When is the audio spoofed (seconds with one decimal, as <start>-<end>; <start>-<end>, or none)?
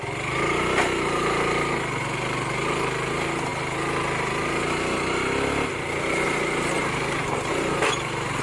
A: none